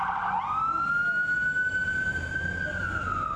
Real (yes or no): yes